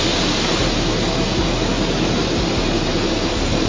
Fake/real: real